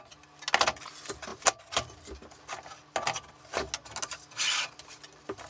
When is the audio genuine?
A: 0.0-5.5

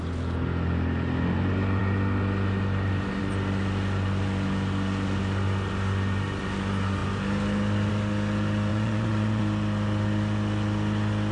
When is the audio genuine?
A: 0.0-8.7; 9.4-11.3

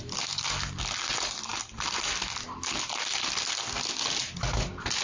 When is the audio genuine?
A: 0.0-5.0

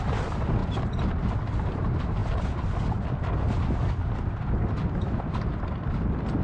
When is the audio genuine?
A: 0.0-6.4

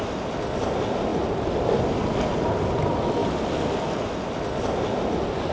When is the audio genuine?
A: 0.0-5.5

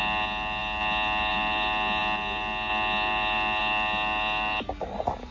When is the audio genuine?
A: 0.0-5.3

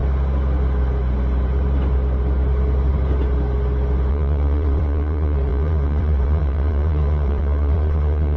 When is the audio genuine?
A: 0.0-4.1

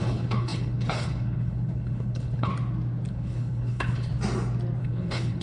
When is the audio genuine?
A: 2.5-3.1; 4.1-4.8